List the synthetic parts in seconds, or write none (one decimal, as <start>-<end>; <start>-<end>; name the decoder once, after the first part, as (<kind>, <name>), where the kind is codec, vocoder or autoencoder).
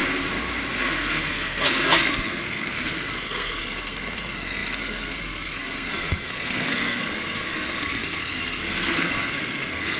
0.8-10.0 (codec, SNAC)